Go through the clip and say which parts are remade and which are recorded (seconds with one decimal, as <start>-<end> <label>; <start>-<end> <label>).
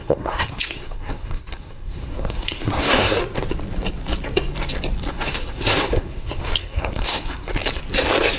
0.0-3.2 remade; 3.2-5.1 recorded; 5.1-7.6 remade; 7.6-8.4 recorded